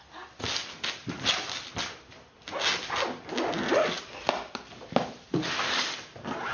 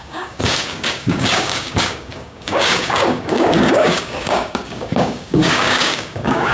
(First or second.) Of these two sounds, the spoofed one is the second